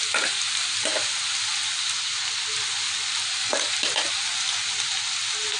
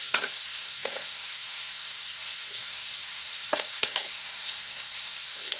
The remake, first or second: second